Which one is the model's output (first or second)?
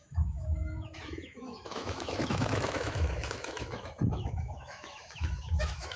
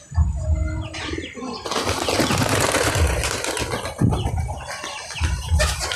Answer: first